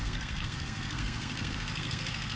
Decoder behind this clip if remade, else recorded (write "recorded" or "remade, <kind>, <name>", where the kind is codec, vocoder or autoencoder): remade, codec, SNAC